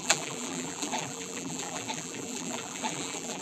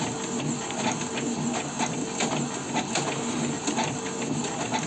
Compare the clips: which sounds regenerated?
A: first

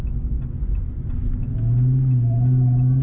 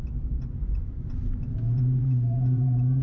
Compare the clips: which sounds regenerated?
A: second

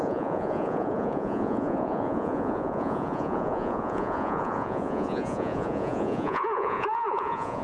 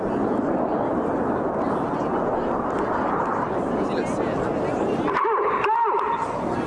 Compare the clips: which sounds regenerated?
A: first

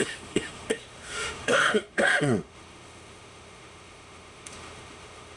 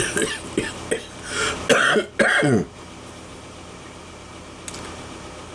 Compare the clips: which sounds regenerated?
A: first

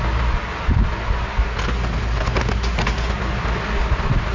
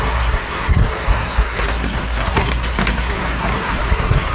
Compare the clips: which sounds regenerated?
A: second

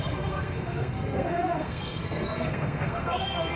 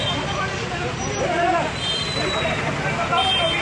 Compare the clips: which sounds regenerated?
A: first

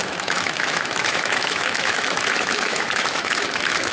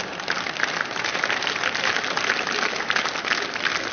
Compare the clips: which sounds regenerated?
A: first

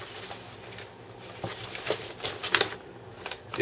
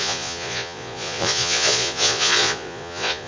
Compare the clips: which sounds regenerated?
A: second